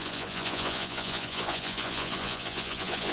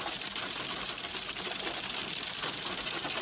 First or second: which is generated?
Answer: first